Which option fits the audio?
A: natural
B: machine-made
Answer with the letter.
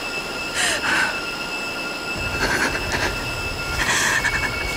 A